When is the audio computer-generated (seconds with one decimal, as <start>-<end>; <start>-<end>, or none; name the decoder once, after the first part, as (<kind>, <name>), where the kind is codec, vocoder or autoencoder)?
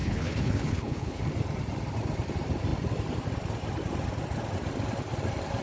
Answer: 0.0-1.2 (codec, HILCodec)